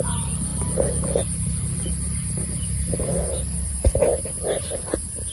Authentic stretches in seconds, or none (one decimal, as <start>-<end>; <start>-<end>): 0.0-5.3